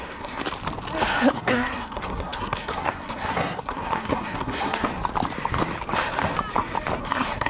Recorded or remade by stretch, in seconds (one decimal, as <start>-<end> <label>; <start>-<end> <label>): 0.0-0.4 remade; 0.4-1.3 recorded; 1.3-4.9 remade; 4.9-7.0 recorded; 7.0-7.5 remade